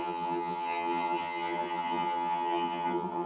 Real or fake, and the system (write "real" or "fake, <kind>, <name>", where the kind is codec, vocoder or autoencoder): fake, vocoder, HiFi-GAN